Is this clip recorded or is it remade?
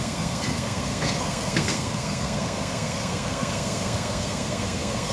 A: remade